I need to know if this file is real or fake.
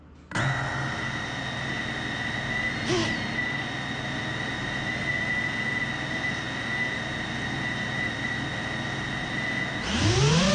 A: real